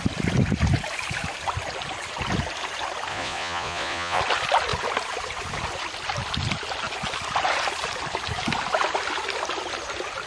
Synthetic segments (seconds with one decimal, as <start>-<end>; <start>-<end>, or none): 3.1-4.2